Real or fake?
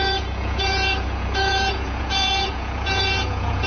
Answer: fake